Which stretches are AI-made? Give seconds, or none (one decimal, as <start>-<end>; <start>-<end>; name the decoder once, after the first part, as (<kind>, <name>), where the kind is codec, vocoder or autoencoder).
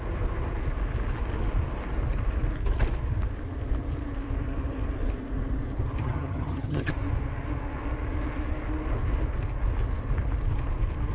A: 6.0-6.9 (vocoder, HiFi-GAN)